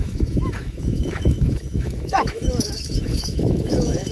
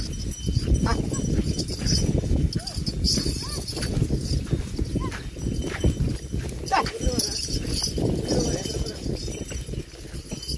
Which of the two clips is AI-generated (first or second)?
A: first